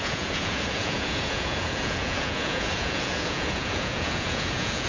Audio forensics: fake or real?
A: fake